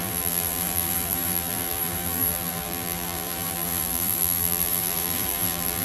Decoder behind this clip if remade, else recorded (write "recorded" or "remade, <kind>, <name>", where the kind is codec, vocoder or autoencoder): remade, vocoder, BigVGAN v2